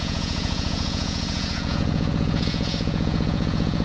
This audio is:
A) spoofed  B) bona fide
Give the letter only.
A